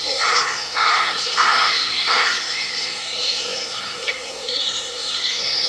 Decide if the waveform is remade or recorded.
remade